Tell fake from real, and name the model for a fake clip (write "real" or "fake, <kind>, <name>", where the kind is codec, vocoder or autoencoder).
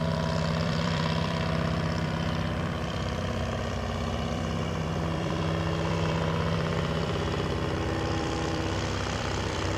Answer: fake, vocoder, BigVGAN v2